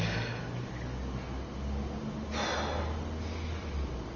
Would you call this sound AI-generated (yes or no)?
no